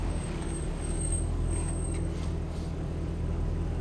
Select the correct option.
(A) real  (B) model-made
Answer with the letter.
B